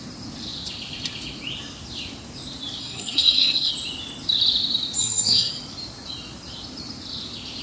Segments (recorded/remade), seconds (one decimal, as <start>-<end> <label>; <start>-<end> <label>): 0.0-2.8 recorded; 2.8-3.7 remade; 3.7-5.0 recorded; 5.0-5.5 remade; 5.5-7.6 recorded